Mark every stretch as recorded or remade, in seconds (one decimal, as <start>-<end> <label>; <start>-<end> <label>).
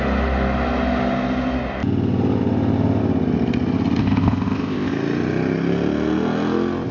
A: 0.0-4.0 recorded; 4.0-4.9 remade; 4.9-6.9 recorded